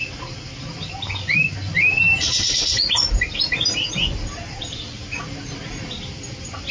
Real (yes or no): yes